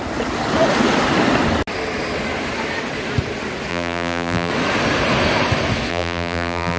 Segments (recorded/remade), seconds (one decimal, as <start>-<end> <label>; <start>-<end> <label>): 0.0-3.7 recorded; 3.7-4.5 remade; 4.5-5.9 recorded; 5.9-6.8 remade